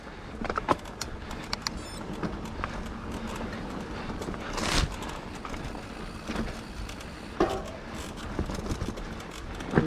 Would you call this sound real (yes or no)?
yes